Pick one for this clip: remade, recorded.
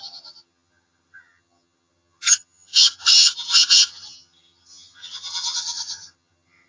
remade